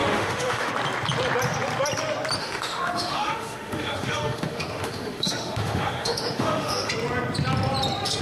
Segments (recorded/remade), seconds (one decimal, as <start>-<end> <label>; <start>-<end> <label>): 0.0-0.7 remade; 0.7-2.4 recorded; 2.4-6.9 remade; 6.9-8.2 recorded